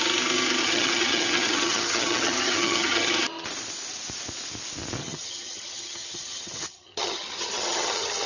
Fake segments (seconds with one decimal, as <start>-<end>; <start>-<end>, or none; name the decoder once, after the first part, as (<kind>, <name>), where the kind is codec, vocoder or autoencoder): 0.6-3.1 (vocoder, HiFi-GAN); 5.0-8.3